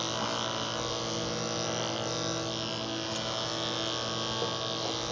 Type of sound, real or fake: real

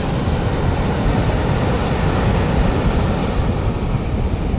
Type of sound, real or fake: real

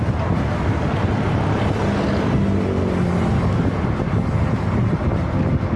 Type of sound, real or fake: real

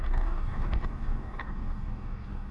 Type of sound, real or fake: fake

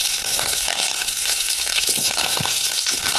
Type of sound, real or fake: fake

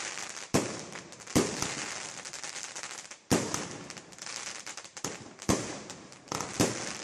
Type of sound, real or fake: real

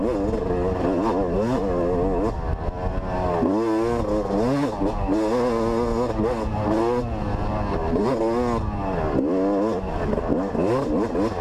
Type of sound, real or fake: real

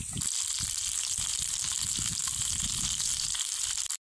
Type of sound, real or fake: real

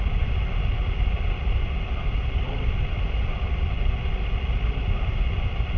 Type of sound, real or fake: real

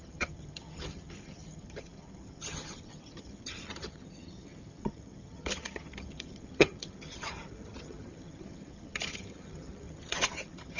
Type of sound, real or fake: fake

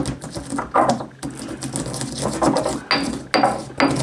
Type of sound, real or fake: real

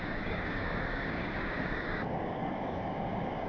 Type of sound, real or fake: fake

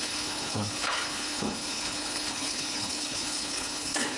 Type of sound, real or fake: fake